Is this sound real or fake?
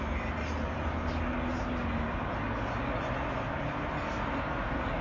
real